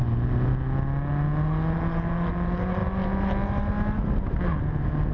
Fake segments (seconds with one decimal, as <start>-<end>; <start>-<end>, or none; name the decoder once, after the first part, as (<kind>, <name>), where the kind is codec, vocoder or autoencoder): none